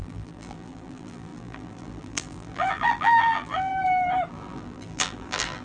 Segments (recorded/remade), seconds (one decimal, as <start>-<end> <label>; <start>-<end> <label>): 0.0-3.7 remade; 3.7-4.3 recorded; 4.3-5.6 remade